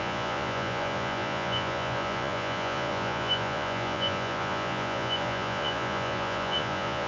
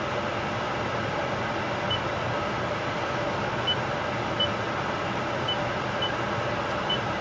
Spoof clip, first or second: first